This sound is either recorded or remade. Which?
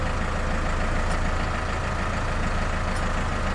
recorded